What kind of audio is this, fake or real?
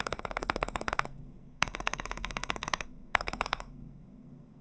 fake